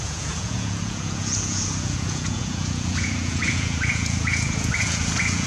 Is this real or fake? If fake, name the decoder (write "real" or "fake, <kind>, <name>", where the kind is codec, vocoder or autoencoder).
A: fake, vocoder, Vocos